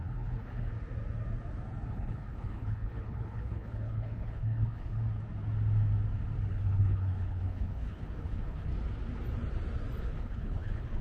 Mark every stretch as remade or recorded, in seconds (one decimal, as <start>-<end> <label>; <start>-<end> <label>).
0.0-0.7 remade; 0.7-1.9 recorded; 1.9-5.0 remade; 5.0-6.5 recorded; 6.5-8.7 remade; 8.7-10.0 recorded; 10.0-11.0 remade